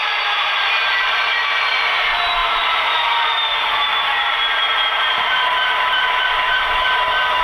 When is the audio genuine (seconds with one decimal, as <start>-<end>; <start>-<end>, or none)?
none